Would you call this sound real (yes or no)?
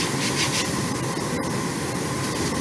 yes